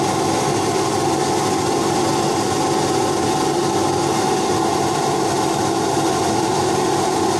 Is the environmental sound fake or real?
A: real